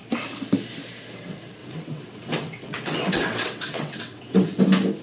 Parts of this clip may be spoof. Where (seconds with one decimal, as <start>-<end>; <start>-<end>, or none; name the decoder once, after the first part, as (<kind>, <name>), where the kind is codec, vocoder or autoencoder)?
1.6-4.6 (vocoder, WaveNeXt)